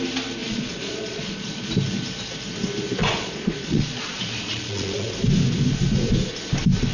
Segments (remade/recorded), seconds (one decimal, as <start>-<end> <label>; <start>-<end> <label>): 0.0-0.4 recorded; 0.4-1.7 remade; 1.7-3.0 recorded; 3.0-5.1 remade; 5.1-6.9 recorded